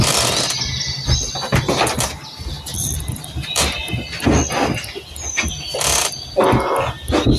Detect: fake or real real